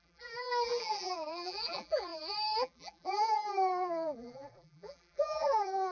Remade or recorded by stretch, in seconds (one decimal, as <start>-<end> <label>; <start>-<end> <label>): 0.0-5.9 remade